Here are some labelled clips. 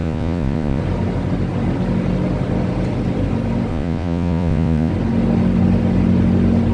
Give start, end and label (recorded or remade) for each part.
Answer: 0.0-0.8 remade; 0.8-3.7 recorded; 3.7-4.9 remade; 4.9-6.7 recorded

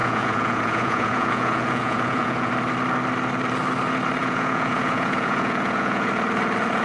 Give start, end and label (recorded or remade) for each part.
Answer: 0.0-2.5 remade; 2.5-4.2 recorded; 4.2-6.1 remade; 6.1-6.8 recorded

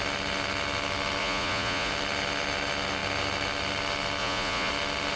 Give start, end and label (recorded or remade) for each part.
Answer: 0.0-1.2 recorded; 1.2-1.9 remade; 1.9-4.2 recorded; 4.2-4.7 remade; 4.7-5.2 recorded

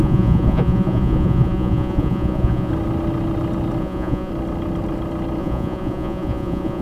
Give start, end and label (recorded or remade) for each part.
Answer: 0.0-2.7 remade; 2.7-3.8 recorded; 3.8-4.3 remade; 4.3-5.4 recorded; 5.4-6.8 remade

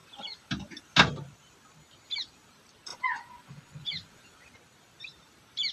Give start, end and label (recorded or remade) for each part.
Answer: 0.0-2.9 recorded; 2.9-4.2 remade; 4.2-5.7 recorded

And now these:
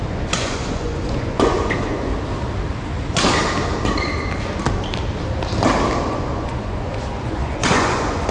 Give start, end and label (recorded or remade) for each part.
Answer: 0.0-2.1 remade; 2.1-6.1 recorded; 6.1-8.3 remade

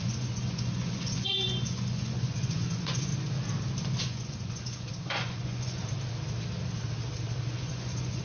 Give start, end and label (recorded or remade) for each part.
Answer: 0.0-3.1 remade; 3.1-4.0 recorded; 4.0-5.8 remade; 5.8-7.5 recorded; 7.5-8.2 remade